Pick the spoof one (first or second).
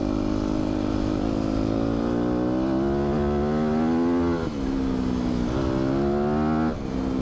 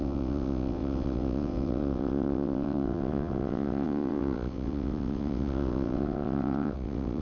second